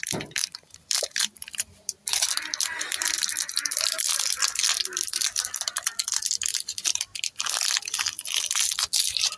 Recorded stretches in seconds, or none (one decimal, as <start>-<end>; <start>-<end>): 0.0-0.4; 1.3-9.4